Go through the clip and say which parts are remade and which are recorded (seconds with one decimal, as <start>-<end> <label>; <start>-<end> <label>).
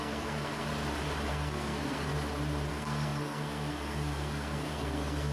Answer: 0.0-0.7 remade; 0.7-1.3 recorded; 1.3-2.1 remade; 2.1-2.7 recorded; 2.7-5.3 remade